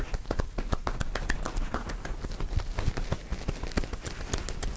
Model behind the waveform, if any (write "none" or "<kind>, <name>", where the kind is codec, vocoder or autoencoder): none